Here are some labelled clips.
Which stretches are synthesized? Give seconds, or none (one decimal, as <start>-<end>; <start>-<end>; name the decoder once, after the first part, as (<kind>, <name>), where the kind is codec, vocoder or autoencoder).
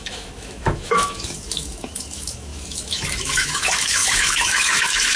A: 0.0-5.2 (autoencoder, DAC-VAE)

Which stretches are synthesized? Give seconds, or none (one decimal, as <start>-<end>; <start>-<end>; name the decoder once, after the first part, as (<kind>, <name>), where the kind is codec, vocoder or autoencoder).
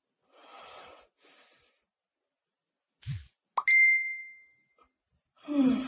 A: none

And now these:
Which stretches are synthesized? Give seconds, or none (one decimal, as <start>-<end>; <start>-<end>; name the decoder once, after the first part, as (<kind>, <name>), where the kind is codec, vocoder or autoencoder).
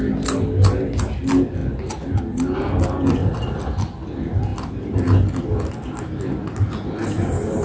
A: 1.6-2.2 (vocoder, BigVGAN v2); 3.2-3.7